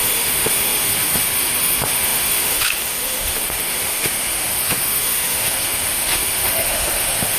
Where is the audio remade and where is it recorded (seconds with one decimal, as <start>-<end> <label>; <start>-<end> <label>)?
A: 0.0-7.4 remade